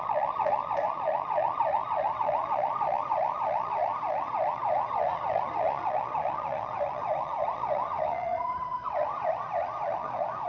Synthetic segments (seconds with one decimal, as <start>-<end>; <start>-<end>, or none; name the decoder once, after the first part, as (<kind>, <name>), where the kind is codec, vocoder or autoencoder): 0.0-10.5 (vocoder, Vocos)